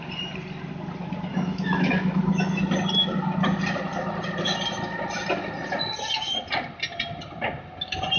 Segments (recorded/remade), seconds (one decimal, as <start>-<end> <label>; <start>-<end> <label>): 0.0-1.3 recorded; 1.3-2.6 remade; 2.6-8.2 recorded